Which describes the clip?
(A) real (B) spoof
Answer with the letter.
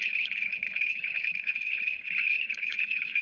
B